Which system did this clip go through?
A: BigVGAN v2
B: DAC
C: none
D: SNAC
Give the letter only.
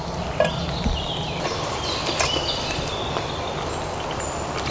C